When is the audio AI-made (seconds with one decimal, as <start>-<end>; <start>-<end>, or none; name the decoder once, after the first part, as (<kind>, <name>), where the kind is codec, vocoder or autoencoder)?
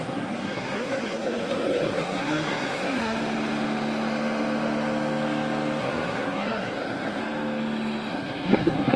0.0-3.2 (codec, SNAC); 5.8-7.2; 8.1-9.0